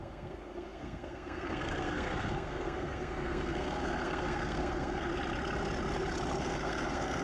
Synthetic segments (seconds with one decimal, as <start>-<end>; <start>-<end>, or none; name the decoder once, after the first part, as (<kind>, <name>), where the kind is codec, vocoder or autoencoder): 0.0-5.1 (codec, SNAC); 6.4-7.2